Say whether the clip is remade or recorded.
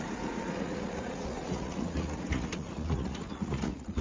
remade